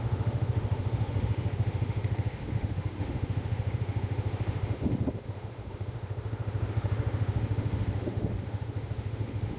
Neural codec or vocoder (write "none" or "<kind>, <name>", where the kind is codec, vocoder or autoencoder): autoencoder, DAC-VAE